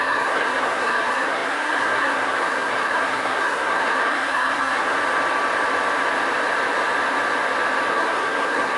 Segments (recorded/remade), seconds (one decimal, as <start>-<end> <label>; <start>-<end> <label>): 0.0-5.0 remade; 5.0-7.9 recorded; 7.9-8.8 remade

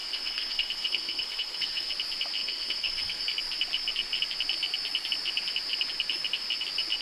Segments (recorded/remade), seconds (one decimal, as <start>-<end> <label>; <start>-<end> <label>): 0.0-1.9 remade; 1.9-2.4 recorded; 2.4-3.2 remade; 3.2-7.0 recorded

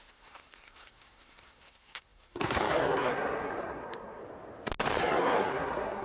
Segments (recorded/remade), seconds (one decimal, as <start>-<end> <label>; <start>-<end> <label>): 0.0-4.2 remade; 4.2-5.0 recorded; 5.0-6.0 remade

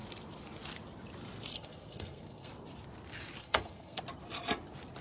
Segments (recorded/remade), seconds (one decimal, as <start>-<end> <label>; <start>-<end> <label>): 0.0-1.5 recorded; 1.5-2.5 remade; 2.5-3.4 recorded; 3.4-4.0 remade; 4.0-5.0 recorded